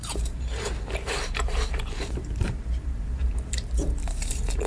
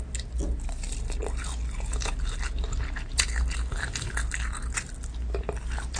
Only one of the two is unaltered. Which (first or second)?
second